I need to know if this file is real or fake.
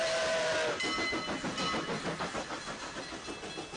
real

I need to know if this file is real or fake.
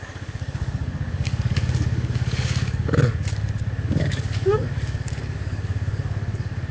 fake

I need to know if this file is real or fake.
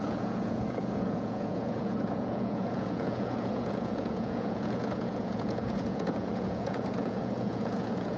fake